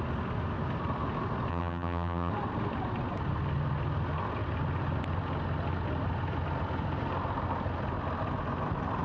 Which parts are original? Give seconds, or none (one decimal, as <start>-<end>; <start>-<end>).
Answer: 0.0-1.5; 2.3-9.0